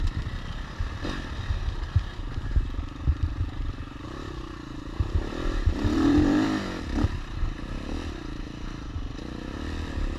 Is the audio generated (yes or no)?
yes